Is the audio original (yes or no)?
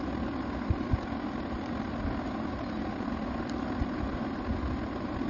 yes